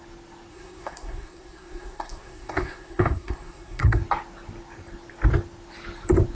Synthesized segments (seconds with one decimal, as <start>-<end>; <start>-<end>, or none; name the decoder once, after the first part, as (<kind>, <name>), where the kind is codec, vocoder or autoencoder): 0.5-4.0 (codec, SNAC)